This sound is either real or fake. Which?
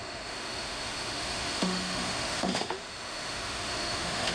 fake